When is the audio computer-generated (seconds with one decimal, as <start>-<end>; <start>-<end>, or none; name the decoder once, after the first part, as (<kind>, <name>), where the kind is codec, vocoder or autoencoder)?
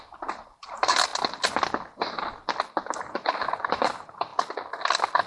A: 0.0-1.1 (vocoder, BigVGAN v2); 3.0-4.3